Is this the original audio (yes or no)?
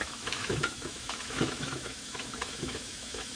no